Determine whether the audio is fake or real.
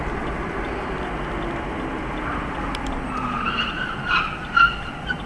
real